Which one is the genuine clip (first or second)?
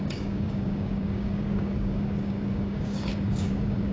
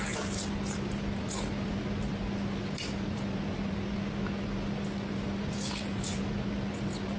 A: second